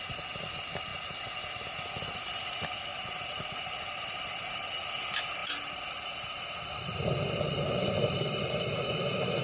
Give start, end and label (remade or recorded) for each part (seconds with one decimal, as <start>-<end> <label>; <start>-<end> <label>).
0.0-2.9 recorded; 2.9-4.5 remade; 4.5-9.4 recorded